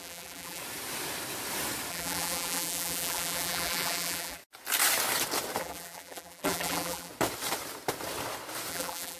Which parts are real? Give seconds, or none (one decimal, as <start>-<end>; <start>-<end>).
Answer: 0.6-1.9; 4.4-5.6; 7.1-8.7